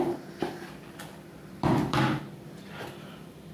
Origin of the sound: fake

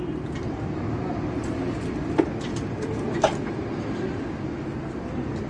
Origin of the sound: real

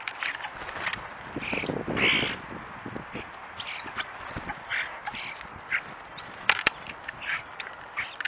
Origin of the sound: real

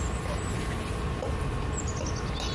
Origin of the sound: real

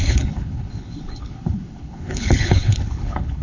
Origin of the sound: fake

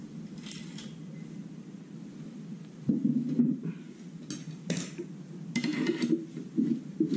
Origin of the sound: real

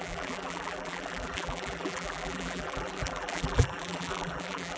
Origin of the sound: fake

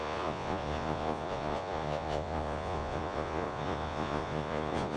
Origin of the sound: fake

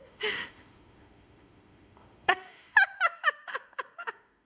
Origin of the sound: fake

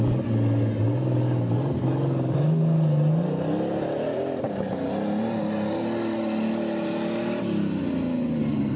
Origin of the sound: real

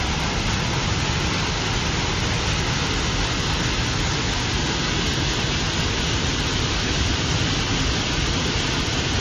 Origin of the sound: real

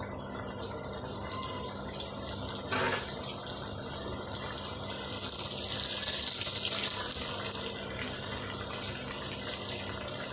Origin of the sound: real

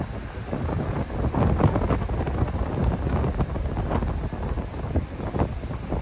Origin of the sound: real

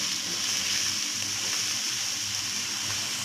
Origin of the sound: real